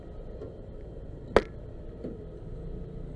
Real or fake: real